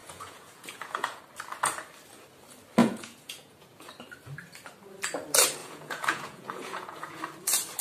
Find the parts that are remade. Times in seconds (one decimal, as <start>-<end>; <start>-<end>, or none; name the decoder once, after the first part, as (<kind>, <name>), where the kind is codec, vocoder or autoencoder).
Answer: 0.0-1.2 (vocoder, Vocos); 2.8-3.9; 5.6-7.2